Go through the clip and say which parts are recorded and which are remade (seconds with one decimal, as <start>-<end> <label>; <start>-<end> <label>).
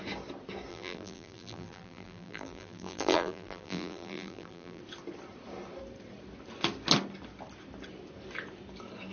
0.0-0.7 recorded; 0.7-4.8 remade; 4.8-9.1 recorded